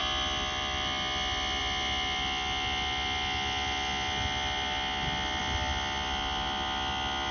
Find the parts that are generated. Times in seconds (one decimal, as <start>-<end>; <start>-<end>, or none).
none